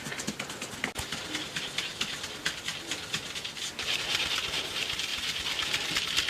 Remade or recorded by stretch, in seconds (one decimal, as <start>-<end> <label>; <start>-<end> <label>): 0.0-6.3 recorded